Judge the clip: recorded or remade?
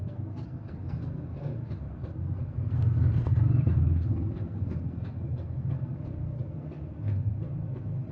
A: remade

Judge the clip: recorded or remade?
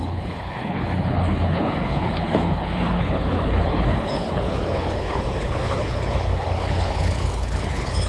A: remade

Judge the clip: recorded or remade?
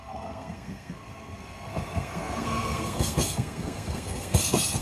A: remade